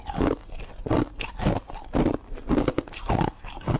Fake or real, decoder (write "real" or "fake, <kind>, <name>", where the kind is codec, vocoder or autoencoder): real